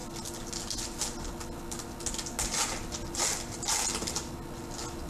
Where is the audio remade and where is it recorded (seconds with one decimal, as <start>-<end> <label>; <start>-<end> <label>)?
0.0-5.1 recorded